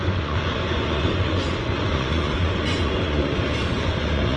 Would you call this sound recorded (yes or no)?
no